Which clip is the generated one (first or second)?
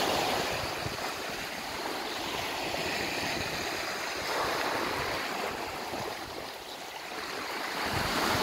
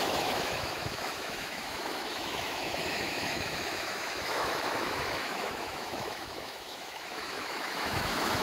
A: second